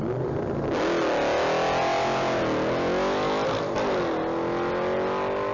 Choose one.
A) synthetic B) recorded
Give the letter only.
B